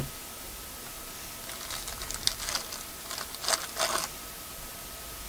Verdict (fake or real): real